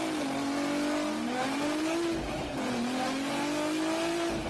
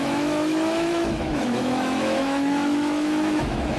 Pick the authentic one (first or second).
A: first